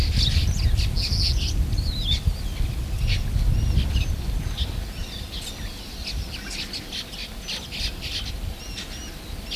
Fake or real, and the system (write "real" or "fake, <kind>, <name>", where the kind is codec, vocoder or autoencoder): real